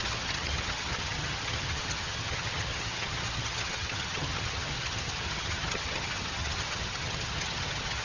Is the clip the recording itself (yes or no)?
no